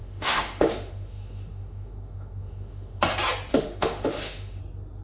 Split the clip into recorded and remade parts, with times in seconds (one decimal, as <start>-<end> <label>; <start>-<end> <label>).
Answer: 0.0-3.0 remade; 3.0-3.5 recorded; 3.5-4.6 remade; 4.6-5.0 recorded

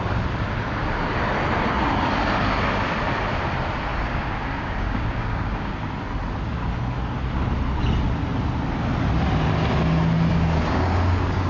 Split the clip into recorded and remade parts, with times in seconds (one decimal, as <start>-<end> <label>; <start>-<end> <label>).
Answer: 0.0-3.9 recorded; 3.9-5.7 remade; 5.7-10.3 recorded; 10.3-11.5 remade